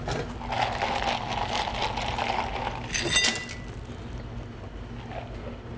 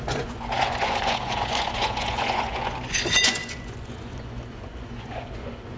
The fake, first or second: second